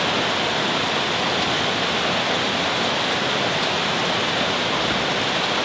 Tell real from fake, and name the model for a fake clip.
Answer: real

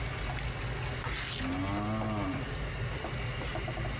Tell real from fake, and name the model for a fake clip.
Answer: real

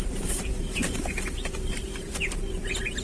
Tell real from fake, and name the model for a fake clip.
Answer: real